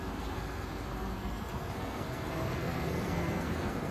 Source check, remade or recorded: remade